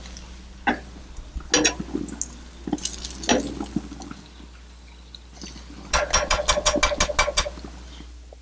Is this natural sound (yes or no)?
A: yes